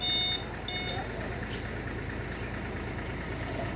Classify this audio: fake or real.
real